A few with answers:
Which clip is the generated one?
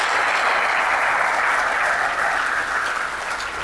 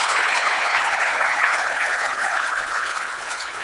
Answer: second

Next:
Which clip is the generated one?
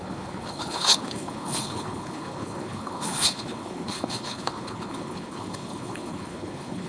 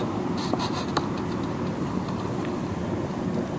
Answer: first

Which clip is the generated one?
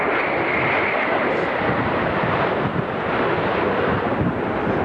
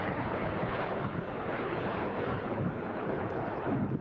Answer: second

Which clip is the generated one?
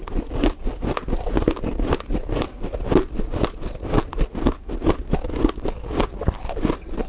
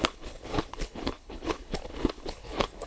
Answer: second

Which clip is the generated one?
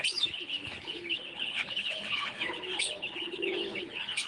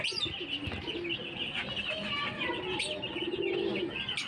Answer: first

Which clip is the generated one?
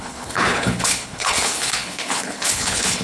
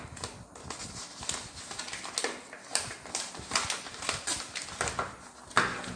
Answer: first